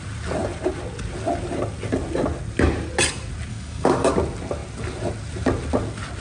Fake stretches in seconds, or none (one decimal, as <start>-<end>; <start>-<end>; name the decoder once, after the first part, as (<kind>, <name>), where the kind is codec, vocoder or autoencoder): 3.5-4.1 (codec, DAC)